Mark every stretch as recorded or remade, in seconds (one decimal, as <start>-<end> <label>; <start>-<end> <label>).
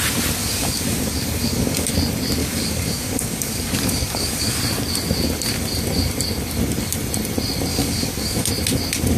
0.0-0.4 recorded; 0.4-1.9 remade; 1.9-2.4 recorded; 2.4-4.6 remade; 4.6-7.7 recorded; 7.7-8.5 remade; 8.5-9.2 recorded